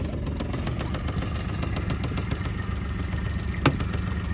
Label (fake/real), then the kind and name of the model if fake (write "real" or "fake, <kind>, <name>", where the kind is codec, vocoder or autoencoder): real